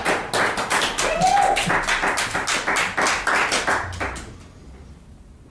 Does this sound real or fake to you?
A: real